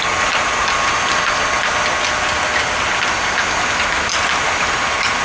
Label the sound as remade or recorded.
recorded